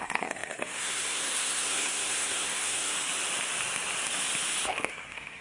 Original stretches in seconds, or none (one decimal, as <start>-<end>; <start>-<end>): 2.9-4.9